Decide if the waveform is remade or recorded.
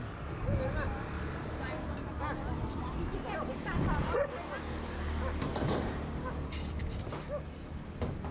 recorded